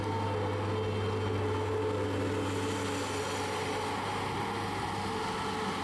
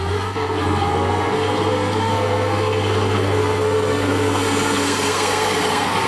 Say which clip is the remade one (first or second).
second